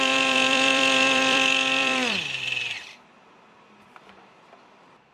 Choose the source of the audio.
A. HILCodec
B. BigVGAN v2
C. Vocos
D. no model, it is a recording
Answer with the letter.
B